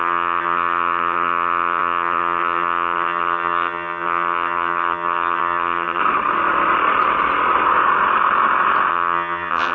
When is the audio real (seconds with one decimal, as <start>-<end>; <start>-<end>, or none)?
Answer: 6.0-8.9